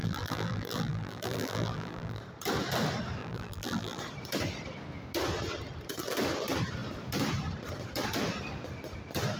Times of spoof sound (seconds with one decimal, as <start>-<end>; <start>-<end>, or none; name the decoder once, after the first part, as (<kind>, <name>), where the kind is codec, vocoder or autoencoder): 0.0-2.2 (vocoder, BigVGAN v2); 3.2-4.0